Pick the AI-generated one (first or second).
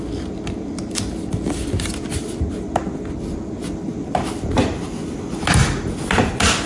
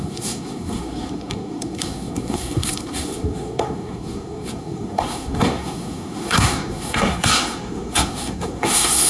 second